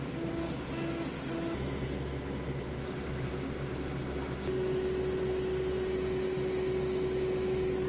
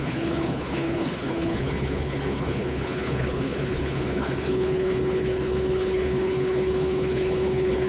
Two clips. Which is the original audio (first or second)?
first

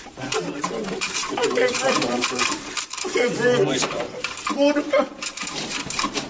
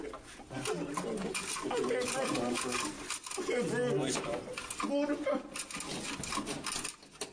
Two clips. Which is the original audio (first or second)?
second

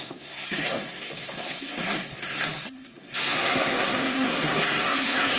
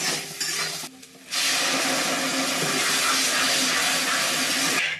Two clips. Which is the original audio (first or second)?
second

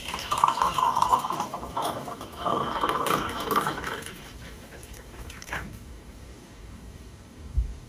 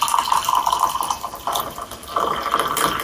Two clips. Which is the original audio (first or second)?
second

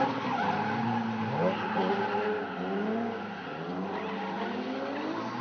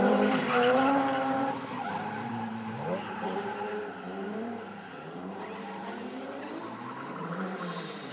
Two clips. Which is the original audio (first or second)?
first